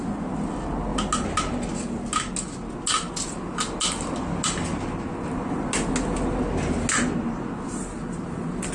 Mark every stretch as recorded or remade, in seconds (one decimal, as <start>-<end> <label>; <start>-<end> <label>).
0.0-8.7 recorded